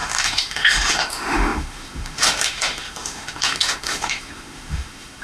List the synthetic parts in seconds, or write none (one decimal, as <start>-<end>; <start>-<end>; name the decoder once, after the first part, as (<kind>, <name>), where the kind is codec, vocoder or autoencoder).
0.0-5.2 (autoencoder, DAC-VAE)